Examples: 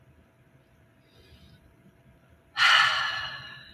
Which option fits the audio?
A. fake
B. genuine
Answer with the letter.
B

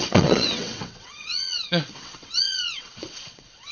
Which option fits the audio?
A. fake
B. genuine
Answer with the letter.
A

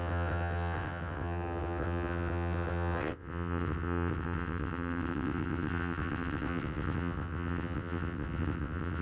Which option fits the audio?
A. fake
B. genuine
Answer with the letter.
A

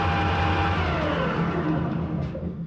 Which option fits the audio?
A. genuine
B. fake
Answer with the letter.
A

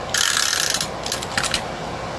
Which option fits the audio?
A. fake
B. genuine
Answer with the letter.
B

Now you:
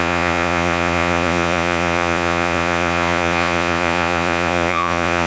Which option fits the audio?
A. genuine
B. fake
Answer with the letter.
B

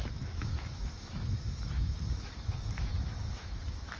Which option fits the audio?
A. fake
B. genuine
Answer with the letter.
A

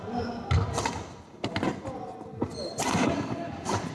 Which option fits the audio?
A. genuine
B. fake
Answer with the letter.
A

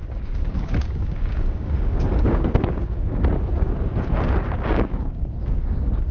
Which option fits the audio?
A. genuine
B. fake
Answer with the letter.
B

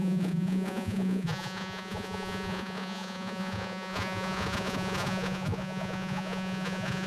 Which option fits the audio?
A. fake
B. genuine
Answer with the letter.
A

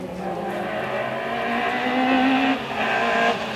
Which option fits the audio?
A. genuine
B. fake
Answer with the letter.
A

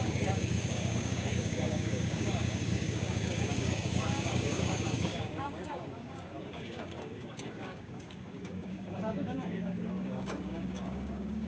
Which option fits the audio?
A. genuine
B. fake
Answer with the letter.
B